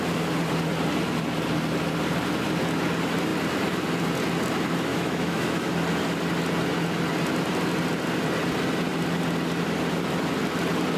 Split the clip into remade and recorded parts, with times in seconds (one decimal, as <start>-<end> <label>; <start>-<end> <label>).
0.0-4.9 recorded; 4.9-5.7 remade; 5.7-11.0 recorded